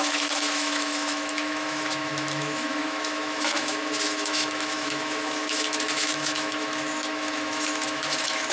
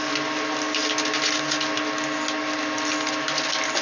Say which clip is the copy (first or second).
first